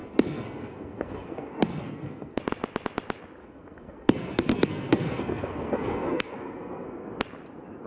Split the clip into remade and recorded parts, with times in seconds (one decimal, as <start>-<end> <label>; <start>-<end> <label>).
0.0-2.4 remade; 2.4-3.4 recorded; 3.4-7.1 remade; 7.1-7.9 recorded